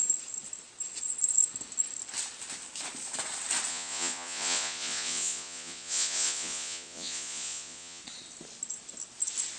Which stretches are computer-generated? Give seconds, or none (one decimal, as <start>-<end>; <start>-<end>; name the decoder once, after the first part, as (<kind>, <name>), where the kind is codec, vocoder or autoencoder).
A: 3.7-8.0 (vocoder, Vocos)